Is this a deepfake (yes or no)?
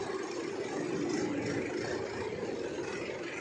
yes